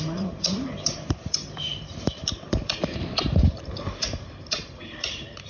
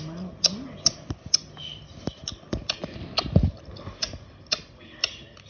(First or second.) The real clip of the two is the second